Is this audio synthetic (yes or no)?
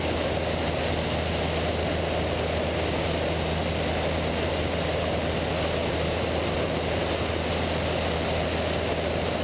no